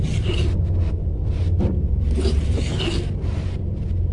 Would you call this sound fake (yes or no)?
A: no